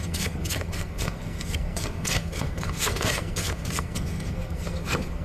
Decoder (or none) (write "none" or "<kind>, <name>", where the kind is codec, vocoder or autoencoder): codec, SNAC